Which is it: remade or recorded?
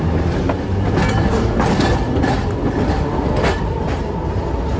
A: recorded